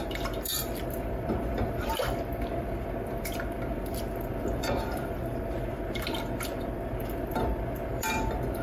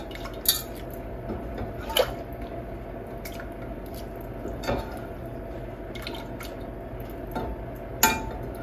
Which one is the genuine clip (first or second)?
second